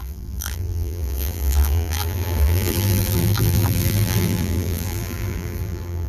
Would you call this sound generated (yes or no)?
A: yes